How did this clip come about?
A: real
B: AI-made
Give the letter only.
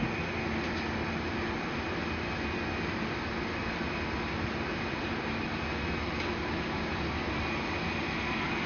A